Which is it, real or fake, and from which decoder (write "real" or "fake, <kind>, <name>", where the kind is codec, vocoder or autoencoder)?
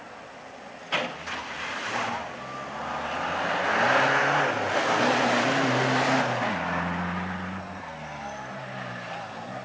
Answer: real